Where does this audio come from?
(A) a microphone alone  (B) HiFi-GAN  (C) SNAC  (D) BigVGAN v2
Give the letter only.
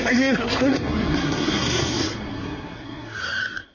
C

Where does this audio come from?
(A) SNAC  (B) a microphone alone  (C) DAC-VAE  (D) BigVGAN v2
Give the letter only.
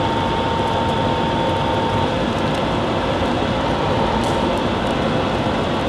B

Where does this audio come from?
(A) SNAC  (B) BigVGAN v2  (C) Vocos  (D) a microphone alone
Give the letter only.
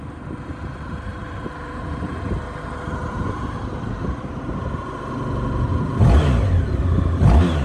D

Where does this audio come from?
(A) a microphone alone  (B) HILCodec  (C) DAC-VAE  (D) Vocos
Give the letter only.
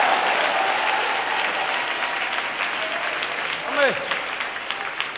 A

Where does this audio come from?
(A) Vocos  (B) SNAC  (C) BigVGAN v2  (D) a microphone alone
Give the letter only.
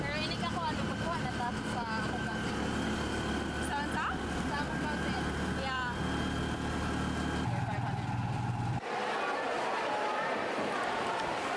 D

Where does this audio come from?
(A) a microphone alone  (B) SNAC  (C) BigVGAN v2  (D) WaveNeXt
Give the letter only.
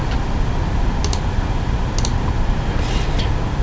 A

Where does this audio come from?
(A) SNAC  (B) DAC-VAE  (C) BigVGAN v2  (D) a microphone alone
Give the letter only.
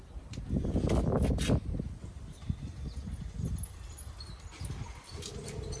D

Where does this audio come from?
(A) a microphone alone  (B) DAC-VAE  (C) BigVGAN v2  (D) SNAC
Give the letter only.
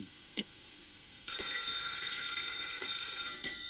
D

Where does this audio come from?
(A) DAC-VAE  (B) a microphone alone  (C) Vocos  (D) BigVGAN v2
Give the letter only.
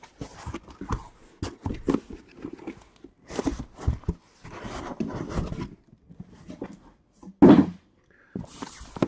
B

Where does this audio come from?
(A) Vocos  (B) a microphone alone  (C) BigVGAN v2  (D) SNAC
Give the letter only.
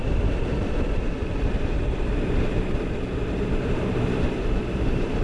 C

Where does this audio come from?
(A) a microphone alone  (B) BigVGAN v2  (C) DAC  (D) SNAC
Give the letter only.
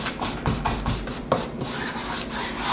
A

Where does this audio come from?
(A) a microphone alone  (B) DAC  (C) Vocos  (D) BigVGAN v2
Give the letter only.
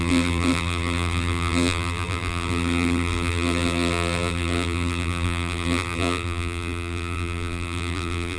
D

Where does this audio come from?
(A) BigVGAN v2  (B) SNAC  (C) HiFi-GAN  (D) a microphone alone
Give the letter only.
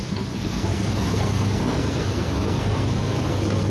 B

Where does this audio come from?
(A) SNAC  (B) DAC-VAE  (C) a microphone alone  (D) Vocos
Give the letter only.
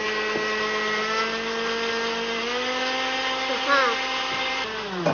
C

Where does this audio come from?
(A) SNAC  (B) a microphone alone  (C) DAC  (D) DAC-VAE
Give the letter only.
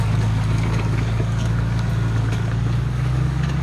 C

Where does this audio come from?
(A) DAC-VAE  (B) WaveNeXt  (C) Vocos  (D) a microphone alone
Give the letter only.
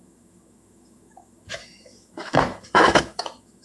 A